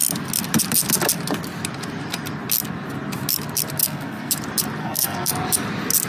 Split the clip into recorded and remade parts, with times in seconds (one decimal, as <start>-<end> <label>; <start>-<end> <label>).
0.0-3.8 recorded; 3.8-4.3 remade; 4.3-4.8 recorded; 4.8-5.3 remade; 5.3-6.1 recorded